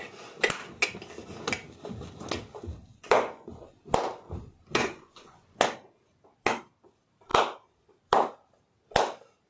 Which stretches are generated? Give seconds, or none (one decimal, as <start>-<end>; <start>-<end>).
2.9-3.7; 4.8-5.6

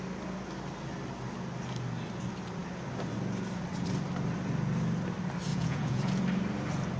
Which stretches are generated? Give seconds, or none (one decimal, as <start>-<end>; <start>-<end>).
5.5-6.2

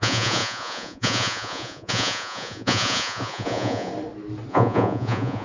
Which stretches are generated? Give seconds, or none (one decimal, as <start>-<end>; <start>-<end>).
0.0-3.9; 4.5-5.4

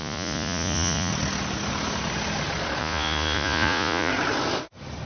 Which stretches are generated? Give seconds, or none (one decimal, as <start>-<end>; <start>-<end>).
0.0-1.1; 2.8-4.1

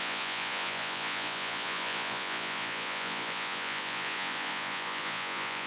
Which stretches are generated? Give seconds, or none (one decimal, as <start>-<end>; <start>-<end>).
0.0-5.7